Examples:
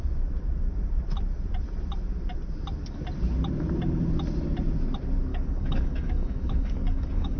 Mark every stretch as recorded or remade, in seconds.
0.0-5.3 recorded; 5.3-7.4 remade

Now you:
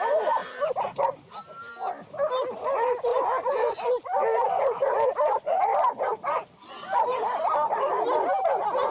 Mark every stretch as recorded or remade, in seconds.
0.0-8.9 recorded